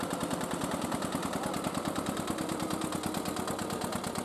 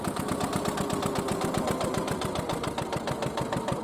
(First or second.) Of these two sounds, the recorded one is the second